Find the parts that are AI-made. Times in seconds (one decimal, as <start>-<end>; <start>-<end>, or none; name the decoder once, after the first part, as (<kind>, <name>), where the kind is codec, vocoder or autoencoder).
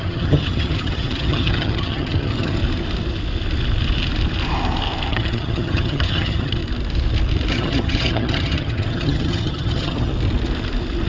0.0-2.6 (vocoder, HiFi-GAN); 5.1-6.6; 7.5-10.1